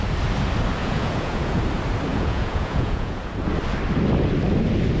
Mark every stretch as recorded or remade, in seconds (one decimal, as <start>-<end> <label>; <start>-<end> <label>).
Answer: 0.0-0.8 recorded; 0.8-1.6 remade; 1.6-2.1 recorded; 2.1-3.3 remade; 3.3-5.0 recorded